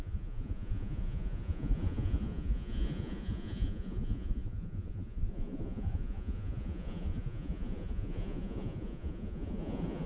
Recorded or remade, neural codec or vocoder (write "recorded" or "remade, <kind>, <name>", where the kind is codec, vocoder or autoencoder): remade, vocoder, Vocos